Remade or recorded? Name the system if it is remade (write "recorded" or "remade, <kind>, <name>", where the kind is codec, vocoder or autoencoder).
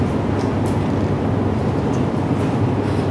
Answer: recorded